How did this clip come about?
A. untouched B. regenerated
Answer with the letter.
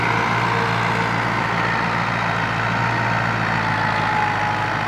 A